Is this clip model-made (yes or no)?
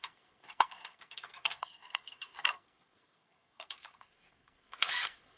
yes